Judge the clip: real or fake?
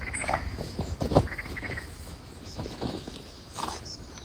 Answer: fake